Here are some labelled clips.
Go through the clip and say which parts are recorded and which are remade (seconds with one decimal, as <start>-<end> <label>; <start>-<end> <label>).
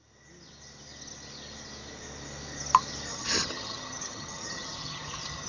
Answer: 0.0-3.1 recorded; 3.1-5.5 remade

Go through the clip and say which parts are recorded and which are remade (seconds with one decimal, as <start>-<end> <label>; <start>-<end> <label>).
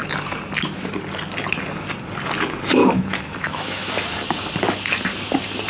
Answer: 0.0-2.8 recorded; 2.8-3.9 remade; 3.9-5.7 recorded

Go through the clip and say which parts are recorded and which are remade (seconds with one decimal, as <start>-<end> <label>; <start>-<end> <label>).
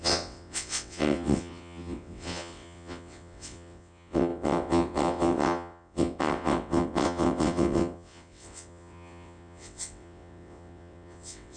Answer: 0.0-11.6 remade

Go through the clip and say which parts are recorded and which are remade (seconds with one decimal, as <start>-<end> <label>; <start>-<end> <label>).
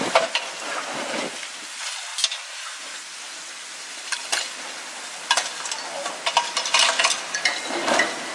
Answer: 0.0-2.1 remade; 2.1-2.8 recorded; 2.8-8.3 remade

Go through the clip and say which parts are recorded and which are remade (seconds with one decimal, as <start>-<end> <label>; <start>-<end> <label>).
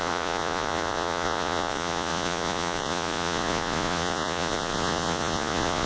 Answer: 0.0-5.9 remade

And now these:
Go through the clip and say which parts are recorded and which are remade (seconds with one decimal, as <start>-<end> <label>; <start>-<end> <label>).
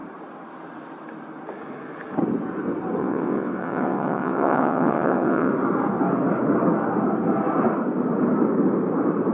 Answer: 0.0-3.0 recorded; 3.0-5.5 remade; 5.5-9.3 recorded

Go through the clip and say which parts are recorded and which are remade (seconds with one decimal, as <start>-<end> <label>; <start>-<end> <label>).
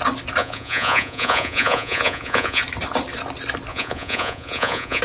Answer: 0.0-0.4 recorded; 0.4-2.6 remade; 2.6-3.7 recorded; 3.7-5.0 remade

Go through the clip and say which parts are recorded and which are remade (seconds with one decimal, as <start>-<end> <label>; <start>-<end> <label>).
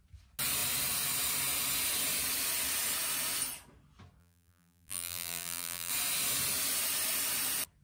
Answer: 0.0-4.2 recorded; 4.2-5.9 remade; 5.9-7.8 recorded